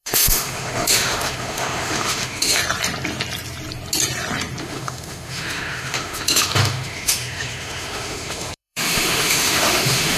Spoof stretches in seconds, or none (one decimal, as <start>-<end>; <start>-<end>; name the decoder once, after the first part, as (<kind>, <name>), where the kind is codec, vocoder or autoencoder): 0.0-2.6 (autoencoder, DAC-VAE); 4.6-10.2